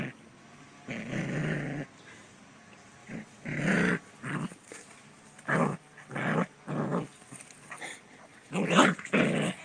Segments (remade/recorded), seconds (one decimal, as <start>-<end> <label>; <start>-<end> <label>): 0.0-3.0 recorded; 3.0-3.6 remade; 3.6-9.6 recorded